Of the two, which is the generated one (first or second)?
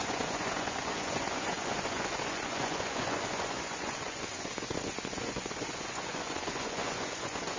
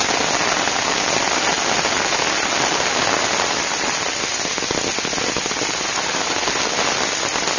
first